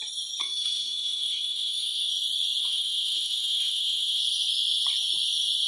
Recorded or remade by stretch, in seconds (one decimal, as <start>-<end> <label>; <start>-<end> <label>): 0.0-0.4 recorded; 0.4-2.1 remade; 2.1-2.6 recorded; 2.6-4.2 remade; 4.2-5.7 recorded